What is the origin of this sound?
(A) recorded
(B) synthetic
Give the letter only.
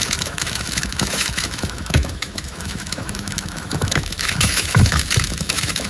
B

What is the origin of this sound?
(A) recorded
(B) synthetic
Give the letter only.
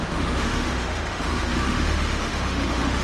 B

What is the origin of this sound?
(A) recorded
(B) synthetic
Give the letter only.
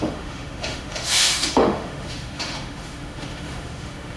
B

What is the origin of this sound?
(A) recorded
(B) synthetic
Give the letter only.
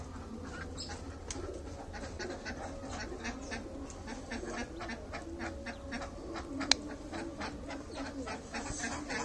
A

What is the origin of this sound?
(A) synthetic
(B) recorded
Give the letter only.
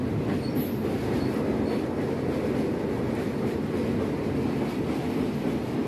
B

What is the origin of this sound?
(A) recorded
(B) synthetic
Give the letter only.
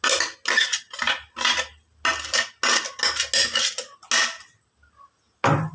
A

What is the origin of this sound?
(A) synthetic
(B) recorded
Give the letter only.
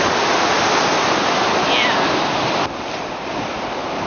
B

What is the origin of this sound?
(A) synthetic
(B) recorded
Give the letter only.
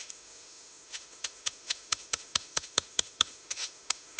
A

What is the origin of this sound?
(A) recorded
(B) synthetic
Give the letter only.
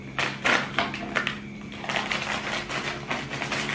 A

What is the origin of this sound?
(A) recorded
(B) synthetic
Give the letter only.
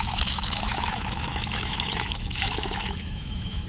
B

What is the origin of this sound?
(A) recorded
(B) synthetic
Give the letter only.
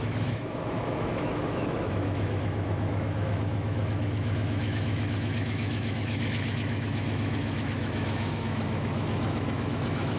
B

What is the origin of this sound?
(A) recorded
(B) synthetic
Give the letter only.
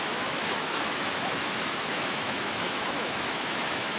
B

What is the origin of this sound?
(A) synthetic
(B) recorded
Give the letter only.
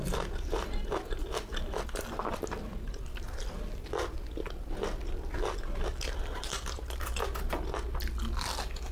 B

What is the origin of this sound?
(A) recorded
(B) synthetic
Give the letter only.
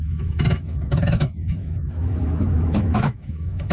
B